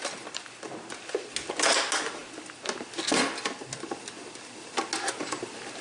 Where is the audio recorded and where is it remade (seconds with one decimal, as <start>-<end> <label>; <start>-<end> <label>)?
0.0-5.8 recorded